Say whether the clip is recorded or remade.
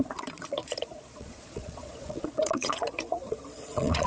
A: remade